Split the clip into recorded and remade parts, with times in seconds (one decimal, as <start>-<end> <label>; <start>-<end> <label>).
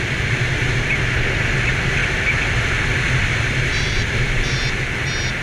0.0-5.4 recorded